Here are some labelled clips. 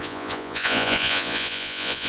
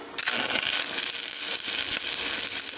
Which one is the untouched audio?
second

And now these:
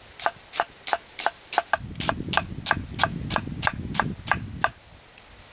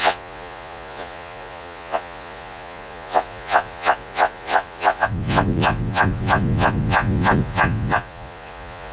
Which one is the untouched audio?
first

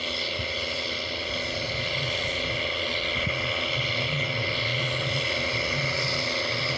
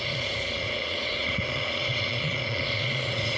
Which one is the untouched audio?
first